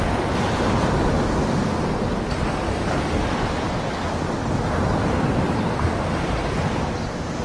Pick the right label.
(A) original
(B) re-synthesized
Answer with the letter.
A